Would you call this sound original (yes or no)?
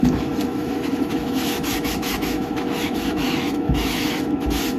no